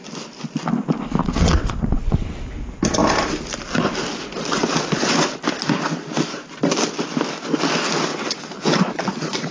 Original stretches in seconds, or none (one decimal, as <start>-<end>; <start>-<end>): 0.0-1.2; 2.4-8.1